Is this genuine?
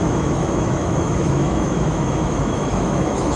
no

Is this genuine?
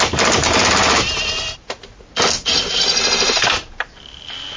yes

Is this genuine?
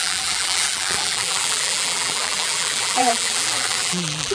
no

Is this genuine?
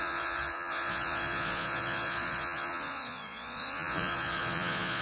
no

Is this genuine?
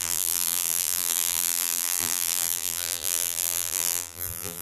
no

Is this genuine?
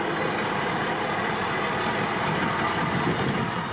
yes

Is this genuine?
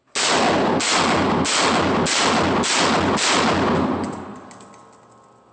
yes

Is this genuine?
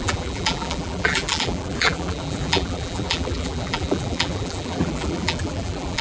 no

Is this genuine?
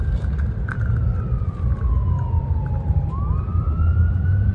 yes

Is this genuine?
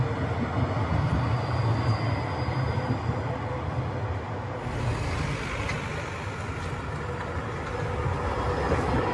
yes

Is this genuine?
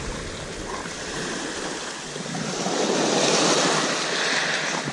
yes